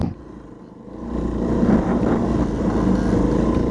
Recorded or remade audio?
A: recorded